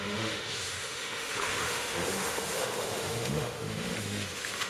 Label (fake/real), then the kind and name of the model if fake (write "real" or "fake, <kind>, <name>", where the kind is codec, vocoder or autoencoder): fake, autoencoder, DAC-VAE